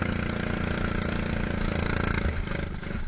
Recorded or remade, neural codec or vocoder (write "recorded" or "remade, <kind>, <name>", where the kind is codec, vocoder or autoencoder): recorded